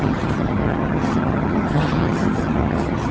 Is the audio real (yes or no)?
no